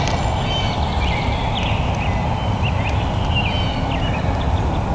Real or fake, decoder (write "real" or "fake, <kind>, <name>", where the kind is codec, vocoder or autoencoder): real